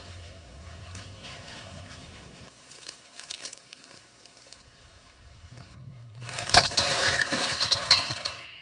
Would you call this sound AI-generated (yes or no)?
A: yes